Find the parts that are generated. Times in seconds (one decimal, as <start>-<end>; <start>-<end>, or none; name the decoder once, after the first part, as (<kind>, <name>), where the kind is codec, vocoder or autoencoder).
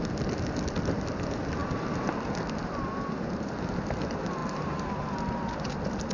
none